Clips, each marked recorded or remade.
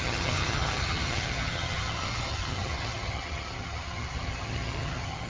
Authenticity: remade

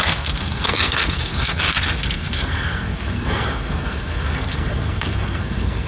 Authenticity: remade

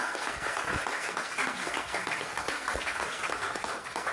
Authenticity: remade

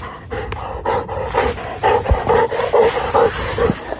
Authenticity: recorded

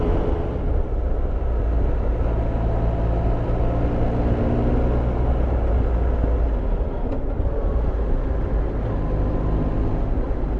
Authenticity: recorded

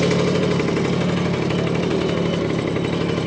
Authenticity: recorded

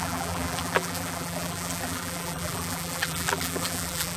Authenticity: remade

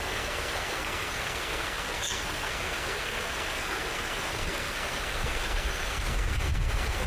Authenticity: remade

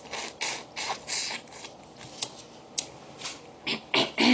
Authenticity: recorded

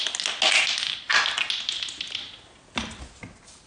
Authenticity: recorded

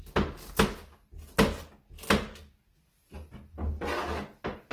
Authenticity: recorded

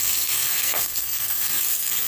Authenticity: remade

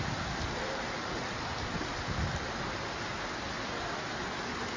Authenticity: recorded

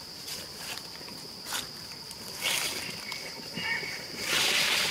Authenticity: recorded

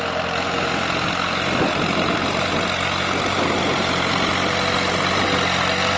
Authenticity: recorded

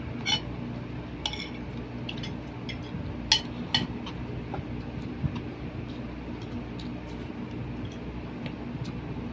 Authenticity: recorded